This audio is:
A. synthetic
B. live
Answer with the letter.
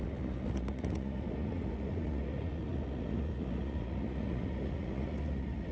A